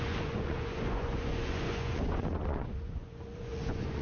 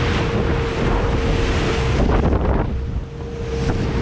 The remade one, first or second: first